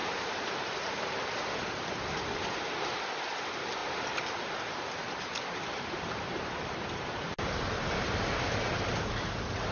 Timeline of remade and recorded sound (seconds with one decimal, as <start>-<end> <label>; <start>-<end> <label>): 0.0-2.9 remade; 2.9-3.8 recorded; 3.8-7.6 remade; 7.6-9.7 recorded